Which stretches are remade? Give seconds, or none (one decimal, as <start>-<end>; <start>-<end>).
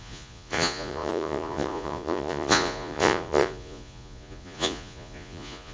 0.0-5.7